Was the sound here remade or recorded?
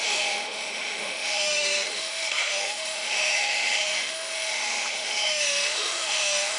remade